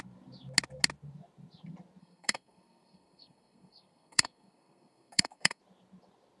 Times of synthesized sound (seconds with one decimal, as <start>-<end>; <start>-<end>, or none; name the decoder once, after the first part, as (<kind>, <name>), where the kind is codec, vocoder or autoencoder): 2.0-5.6 (codec, SNAC)